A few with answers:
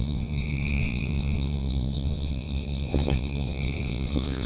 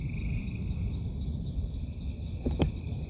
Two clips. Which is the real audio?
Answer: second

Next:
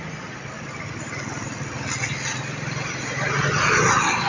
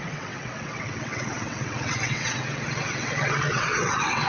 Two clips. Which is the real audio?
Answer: first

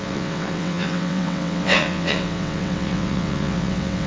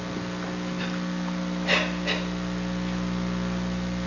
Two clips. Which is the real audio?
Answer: second